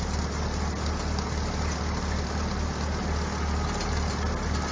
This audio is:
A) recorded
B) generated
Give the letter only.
A